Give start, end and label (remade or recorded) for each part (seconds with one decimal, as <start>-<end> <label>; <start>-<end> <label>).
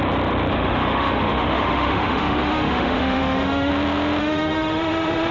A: 0.0-0.5 recorded; 0.5-3.7 remade; 3.7-4.2 recorded; 4.2-5.3 remade